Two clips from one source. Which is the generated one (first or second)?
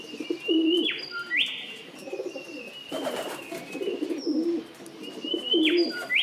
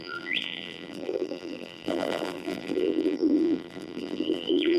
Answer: second